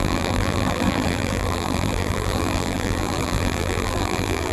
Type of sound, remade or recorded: remade